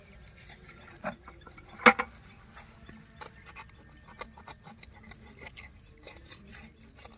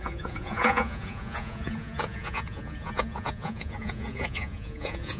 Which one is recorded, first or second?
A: first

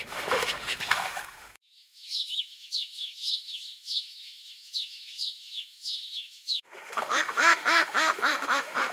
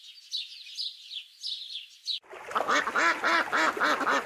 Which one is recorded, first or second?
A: second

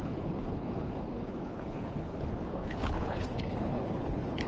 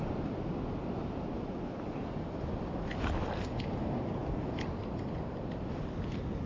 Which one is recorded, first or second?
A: second